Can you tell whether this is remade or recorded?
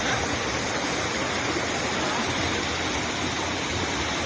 recorded